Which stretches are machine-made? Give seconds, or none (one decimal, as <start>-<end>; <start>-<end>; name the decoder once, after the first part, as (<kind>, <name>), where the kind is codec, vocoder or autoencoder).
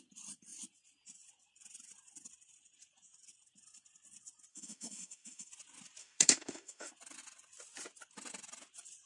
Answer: 4.5-5.5 (autoencoder, DAC-VAE); 6.0-6.9